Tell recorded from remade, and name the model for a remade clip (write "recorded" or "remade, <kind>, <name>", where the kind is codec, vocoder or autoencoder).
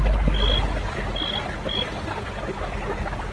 recorded